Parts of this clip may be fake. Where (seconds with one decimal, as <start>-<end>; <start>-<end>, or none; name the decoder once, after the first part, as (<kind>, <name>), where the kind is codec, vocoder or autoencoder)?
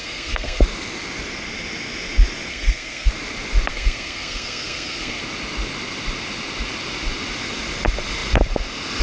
0.0-0.6 (codec, SNAC); 2.5-3.1; 3.7-5.2